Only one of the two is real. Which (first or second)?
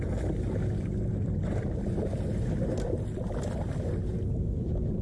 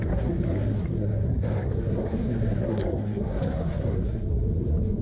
first